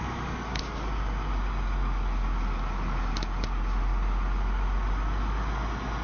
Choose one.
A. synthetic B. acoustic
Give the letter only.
B